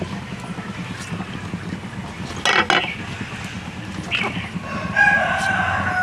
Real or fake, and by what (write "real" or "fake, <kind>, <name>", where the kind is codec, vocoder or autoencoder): real